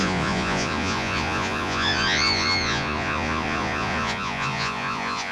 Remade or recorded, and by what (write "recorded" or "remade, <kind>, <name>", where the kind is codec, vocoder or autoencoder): remade, vocoder, Vocos